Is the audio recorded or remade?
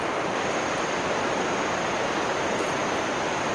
recorded